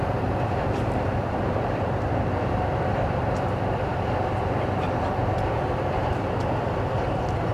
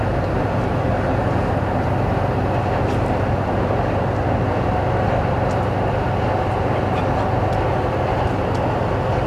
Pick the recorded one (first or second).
second